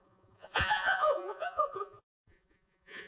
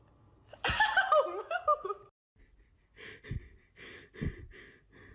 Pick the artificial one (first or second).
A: first